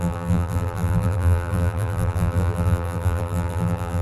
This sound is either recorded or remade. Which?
remade